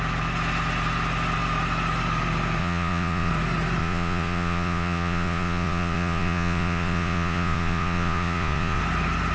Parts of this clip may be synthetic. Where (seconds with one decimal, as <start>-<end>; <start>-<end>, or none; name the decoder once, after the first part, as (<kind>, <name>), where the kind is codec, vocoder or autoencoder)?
2.6-3.3 (vocoder, Vocos); 3.8-8.8